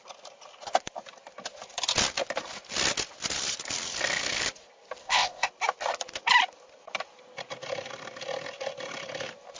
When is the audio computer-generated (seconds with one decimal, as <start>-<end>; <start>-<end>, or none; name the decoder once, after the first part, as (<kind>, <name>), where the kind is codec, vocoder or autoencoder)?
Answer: 5.0-5.5 (codec, ZipCodec)